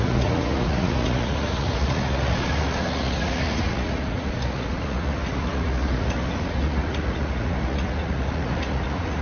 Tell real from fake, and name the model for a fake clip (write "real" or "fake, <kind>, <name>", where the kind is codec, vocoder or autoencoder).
fake, vocoder, Vocos